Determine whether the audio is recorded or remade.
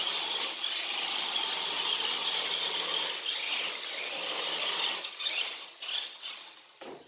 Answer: recorded